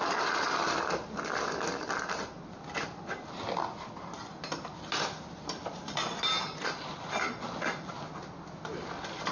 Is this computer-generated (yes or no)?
no